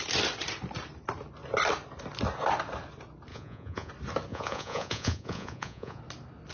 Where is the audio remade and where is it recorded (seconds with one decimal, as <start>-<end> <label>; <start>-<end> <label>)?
0.0-3.3 recorded; 3.3-3.9 remade; 3.9-4.3 recorded; 4.3-6.0 remade; 6.0-6.5 recorded